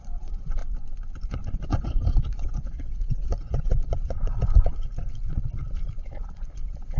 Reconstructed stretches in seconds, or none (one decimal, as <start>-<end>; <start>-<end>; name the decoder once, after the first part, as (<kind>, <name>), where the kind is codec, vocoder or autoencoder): 0.0-0.6 (vocoder, Vocos); 1.3-4.3; 6.0-7.0